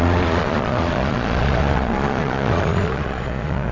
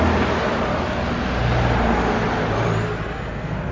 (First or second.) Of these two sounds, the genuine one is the second